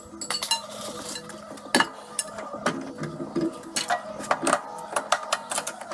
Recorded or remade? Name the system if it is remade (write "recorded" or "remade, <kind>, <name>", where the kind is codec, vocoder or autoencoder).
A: recorded